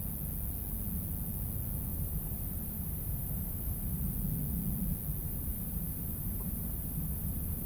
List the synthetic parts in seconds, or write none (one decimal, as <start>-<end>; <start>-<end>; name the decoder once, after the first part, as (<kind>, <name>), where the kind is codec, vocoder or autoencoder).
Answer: 1.9-4.0 (vocoder, BigVGAN v2); 5.2-7.7